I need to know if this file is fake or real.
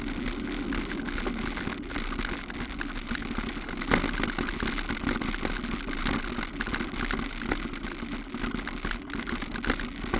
real